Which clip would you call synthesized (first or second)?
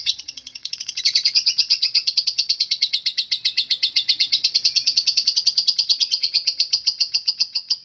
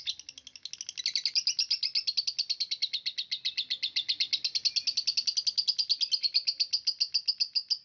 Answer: first